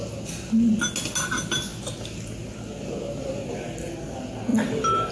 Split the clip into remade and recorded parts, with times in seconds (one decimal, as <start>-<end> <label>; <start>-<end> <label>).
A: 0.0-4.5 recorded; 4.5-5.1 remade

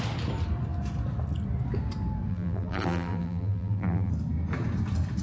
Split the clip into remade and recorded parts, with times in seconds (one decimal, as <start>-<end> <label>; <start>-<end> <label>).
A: 0.0-2.3 recorded; 2.3-4.1 remade; 4.1-5.2 recorded

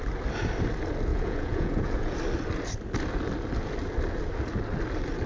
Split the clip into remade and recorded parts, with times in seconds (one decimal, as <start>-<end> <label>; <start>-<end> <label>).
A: 0.0-1.1 recorded; 1.1-2.2 remade; 2.2-5.3 recorded

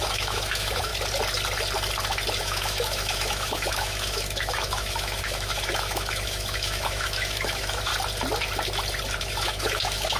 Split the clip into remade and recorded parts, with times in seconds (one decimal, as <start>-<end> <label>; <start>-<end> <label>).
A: 0.0-0.9 remade; 0.9-2.4 recorded; 2.4-7.9 remade; 7.9-9.2 recorded; 9.2-10.2 remade

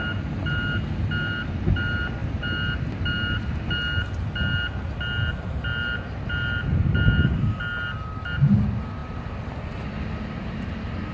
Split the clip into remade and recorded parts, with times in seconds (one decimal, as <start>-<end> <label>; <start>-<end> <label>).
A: 0.0-11.1 recorded

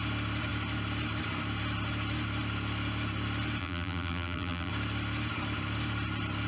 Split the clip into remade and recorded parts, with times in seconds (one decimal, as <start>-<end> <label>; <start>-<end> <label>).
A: 0.0-3.6 recorded; 3.6-4.7 remade; 4.7-6.5 recorded

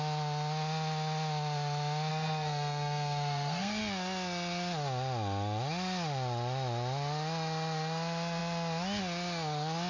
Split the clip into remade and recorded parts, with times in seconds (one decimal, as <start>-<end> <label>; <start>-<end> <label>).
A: 0.0-2.1 recorded; 2.1-3.8 remade; 3.8-9.9 recorded